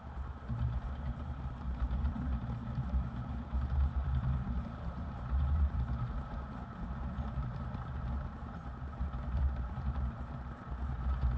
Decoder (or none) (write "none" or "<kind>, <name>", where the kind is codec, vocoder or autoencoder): vocoder, BigVGAN v2